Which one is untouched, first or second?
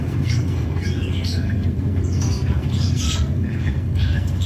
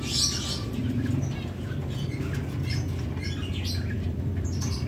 second